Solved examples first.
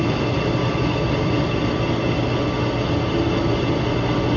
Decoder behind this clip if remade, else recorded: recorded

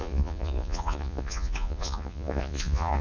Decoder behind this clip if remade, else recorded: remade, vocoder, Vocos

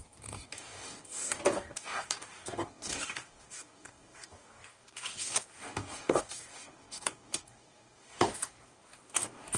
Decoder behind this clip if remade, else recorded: remade, codec, DAC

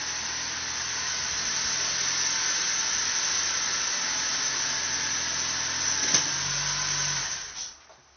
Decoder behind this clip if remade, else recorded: recorded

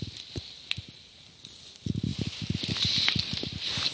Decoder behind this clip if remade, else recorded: recorded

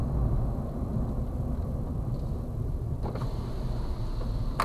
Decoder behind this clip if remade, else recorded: recorded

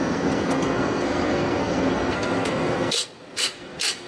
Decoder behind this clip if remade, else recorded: remade, codec, SNAC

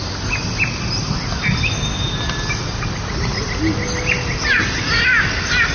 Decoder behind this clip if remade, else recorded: recorded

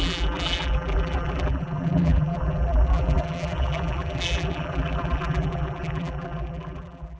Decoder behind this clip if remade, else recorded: remade, vocoder, BigVGAN v2